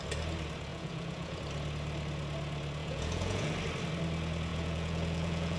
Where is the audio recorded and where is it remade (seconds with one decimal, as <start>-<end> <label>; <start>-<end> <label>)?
0.0-0.7 recorded; 0.7-1.4 remade; 1.4-2.8 recorded; 2.8-3.5 remade; 3.5-4.5 recorded; 4.5-5.6 remade